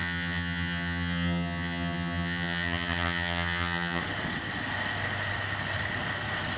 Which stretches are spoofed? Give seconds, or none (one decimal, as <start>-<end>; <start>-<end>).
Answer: 0.0-4.0